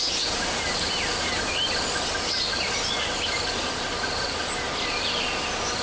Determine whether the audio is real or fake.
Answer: real